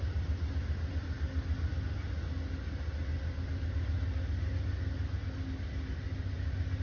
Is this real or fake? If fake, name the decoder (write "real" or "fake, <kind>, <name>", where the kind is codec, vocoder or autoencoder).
real